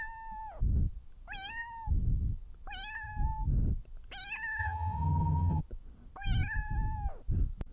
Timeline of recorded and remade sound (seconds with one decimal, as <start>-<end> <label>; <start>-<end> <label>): 0.0-4.6 recorded; 4.6-5.6 remade; 5.6-7.7 recorded